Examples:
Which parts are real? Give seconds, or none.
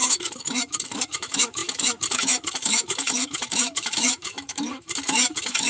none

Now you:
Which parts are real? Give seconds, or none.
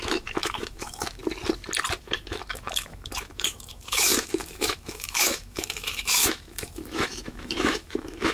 1.2-2.0